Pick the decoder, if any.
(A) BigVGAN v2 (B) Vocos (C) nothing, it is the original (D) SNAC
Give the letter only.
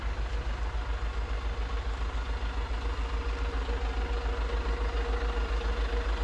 C